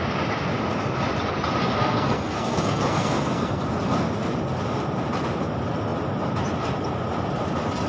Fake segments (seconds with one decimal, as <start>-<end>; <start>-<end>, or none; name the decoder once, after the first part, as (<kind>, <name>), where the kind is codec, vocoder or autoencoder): 1.8-3.6 (codec, SNAC)